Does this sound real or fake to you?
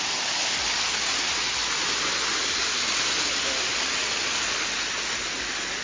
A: real